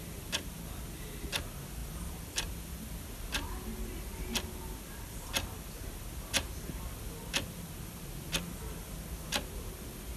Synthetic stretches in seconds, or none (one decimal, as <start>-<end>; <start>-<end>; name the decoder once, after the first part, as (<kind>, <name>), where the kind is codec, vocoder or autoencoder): none